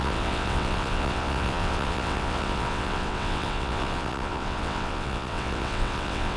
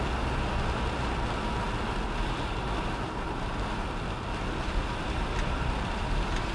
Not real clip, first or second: first